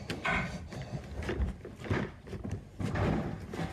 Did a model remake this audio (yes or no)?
yes